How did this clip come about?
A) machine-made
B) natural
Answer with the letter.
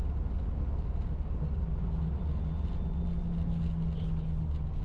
B